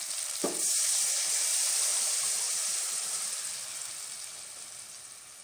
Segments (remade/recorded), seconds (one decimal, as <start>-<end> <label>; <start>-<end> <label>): 0.0-0.4 recorded; 0.4-1.2 remade; 1.2-1.9 recorded; 1.9-3.3 remade; 3.3-5.4 recorded